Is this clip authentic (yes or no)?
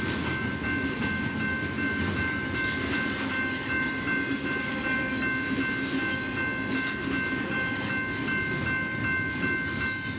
yes